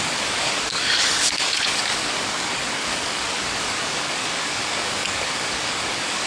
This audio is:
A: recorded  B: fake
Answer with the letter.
B